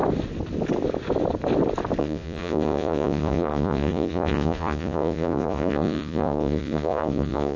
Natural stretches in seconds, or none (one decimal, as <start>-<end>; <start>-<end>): 0.0-2.0